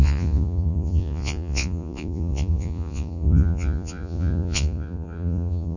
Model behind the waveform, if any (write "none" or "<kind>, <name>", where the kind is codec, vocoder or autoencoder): vocoder, Vocos